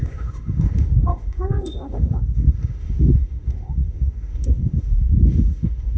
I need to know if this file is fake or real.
fake